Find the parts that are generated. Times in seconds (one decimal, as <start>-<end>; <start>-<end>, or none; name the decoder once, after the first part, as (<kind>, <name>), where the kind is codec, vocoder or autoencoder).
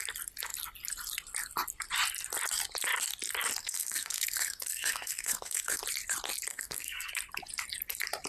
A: 3.6-5.8 (codec, SNAC); 6.5-7.1